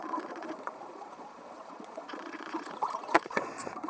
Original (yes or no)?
no